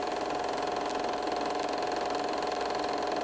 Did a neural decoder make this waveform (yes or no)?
no